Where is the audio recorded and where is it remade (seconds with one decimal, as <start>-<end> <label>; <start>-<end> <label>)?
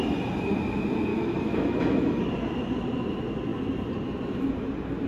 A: 0.0-1.1 recorded; 1.1-2.3 remade; 2.3-5.1 recorded